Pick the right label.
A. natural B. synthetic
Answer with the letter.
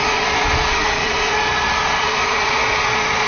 B